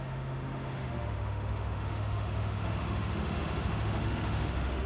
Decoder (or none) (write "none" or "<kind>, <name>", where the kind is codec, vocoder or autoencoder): autoencoder, DAC-VAE